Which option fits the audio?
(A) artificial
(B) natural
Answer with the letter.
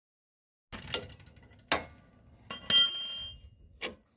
B